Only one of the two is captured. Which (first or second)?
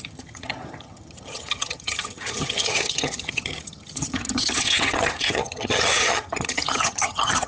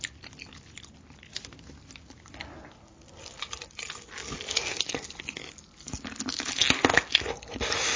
second